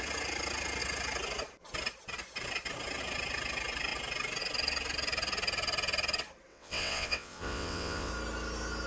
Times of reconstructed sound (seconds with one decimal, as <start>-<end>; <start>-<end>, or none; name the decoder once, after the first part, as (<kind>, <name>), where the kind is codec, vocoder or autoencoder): 6.5-8.1 (vocoder, WaveNeXt)